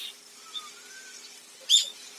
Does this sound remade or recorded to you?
recorded